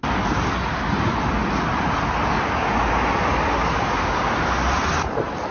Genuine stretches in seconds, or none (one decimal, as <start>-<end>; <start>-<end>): 0.0-5.5